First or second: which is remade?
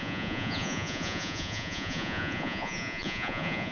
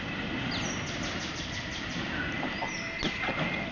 first